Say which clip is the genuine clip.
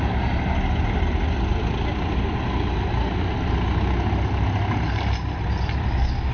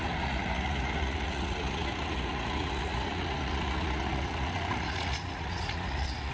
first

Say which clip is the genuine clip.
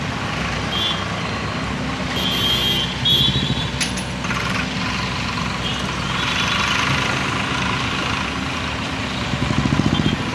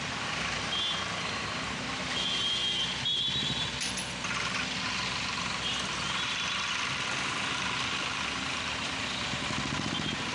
first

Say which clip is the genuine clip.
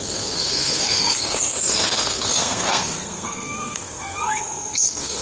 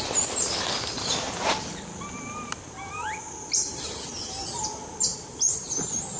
second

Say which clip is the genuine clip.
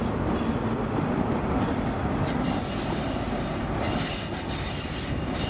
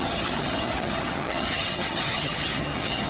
first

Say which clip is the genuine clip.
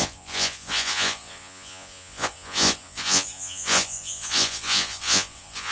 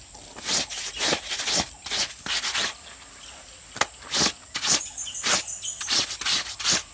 second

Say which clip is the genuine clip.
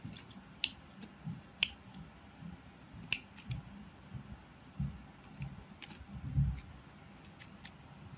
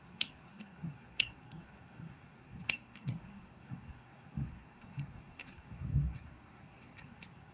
first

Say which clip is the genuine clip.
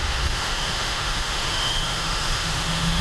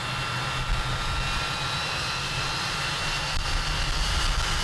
second